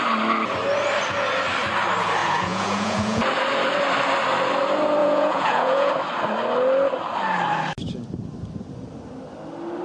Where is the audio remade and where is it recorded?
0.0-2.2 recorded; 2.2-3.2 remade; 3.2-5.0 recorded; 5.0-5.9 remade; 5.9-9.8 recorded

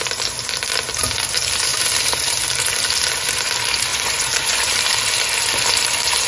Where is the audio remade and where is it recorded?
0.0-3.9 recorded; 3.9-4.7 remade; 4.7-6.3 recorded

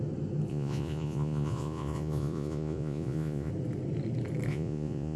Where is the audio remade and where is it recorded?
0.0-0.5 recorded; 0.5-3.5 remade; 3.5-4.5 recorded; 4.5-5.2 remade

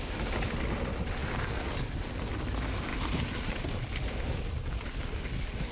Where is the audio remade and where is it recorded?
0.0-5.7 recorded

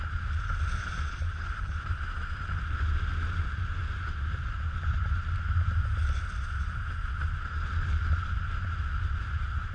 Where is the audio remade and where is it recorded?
0.0-9.7 recorded

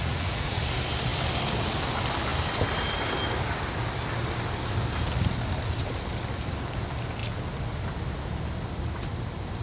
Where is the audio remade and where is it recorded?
0.0-0.6 remade; 0.6-9.6 recorded

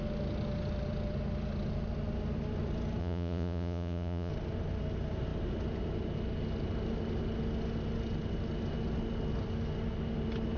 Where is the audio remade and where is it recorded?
0.0-3.0 recorded; 3.0-4.3 remade; 4.3-10.6 recorded